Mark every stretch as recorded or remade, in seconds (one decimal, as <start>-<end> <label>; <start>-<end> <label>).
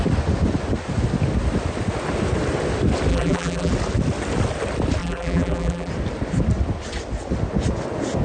0.0-3.1 recorded; 3.1-3.7 remade; 3.7-5.0 recorded; 5.0-5.9 remade; 5.9-8.2 recorded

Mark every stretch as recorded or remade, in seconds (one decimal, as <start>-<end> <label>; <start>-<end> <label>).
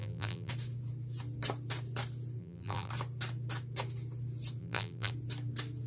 0.0-0.5 remade; 0.5-2.4 recorded; 2.4-2.9 remade; 2.9-4.6 recorded; 4.6-5.1 remade; 5.1-5.9 recorded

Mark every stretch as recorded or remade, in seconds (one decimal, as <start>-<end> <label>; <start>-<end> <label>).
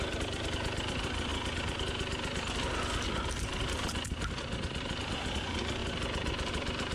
0.0-1.3 remade; 1.3-4.3 recorded; 4.3-5.8 remade; 5.8-6.5 recorded; 6.5-6.9 remade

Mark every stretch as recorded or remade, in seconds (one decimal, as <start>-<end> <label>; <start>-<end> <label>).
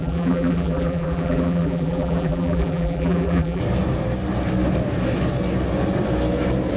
0.0-3.6 remade; 3.6-6.8 recorded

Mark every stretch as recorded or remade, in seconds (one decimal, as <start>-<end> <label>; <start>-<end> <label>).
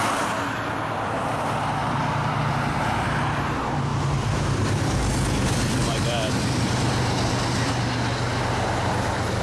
0.0-1.8 recorded; 1.8-2.8 remade; 2.8-3.9 recorded; 3.9-6.3 remade; 6.3-9.4 recorded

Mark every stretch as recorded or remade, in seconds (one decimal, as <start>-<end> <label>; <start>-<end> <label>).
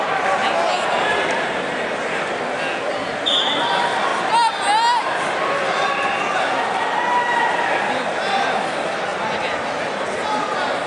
0.0-0.4 remade; 0.4-0.9 recorded; 0.9-4.1 remade; 4.1-7.9 recorded; 7.9-9.1 remade; 9.1-10.9 recorded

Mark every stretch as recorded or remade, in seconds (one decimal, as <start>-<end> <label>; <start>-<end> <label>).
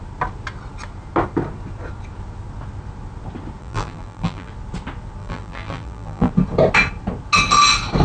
0.0-3.6 recorded; 3.6-4.5 remade; 4.5-5.2 recorded; 5.2-6.3 remade; 6.3-8.0 recorded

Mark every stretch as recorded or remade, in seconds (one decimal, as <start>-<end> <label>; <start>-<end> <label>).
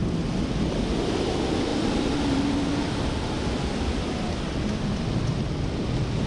0.0-1.7 recorded; 1.7-2.4 remade; 2.4-6.3 recorded